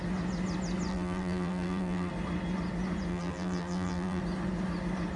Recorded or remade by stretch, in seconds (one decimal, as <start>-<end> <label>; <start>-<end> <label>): 0.0-0.9 recorded; 0.9-2.1 remade; 2.1-3.1 recorded; 3.1-4.2 remade; 4.2-5.2 recorded